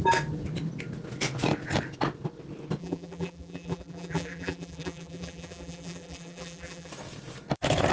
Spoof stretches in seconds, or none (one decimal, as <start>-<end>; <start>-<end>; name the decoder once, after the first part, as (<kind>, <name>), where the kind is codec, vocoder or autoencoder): 2.8-6.9 (vocoder, BigVGAN v2)